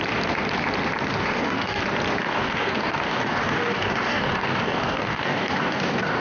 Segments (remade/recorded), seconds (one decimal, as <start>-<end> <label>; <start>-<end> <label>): 0.0-1.2 recorded; 1.2-1.8 remade; 1.8-2.2 recorded; 2.2-6.2 remade